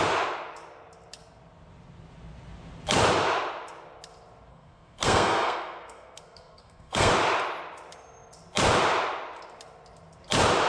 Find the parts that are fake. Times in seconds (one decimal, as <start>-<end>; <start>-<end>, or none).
4.5-7.1